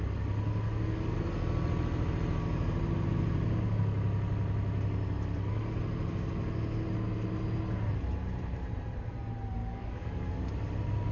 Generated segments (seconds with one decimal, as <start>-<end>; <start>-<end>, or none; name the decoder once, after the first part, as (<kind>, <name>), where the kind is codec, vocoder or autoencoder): 9.6-10.5 (codec, DAC)